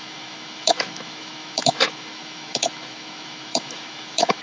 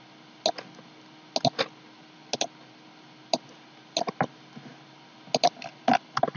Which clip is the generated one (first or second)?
first